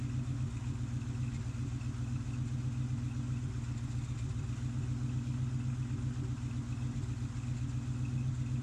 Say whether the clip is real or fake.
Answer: real